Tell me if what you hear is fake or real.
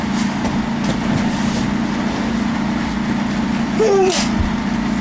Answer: real